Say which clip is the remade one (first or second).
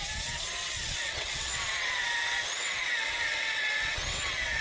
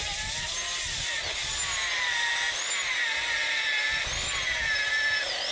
first